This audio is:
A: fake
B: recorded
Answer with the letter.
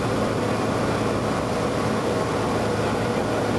B